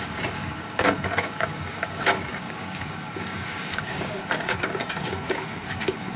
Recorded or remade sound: remade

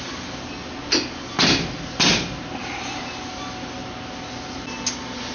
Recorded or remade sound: recorded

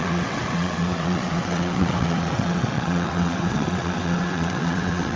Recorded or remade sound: remade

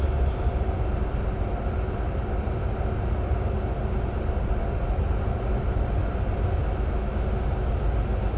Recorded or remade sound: recorded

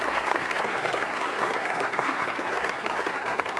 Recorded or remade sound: remade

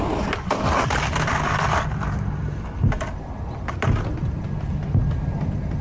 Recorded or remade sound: recorded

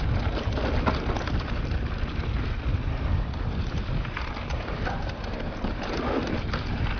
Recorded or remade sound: recorded